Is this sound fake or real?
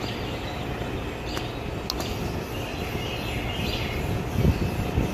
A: real